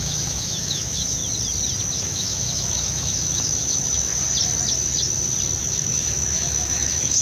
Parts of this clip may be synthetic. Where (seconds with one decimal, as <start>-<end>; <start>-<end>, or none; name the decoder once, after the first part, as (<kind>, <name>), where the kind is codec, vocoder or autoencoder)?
0.0-1.2 (autoencoder, DAC-VAE); 2.0-4.1; 5.6-7.2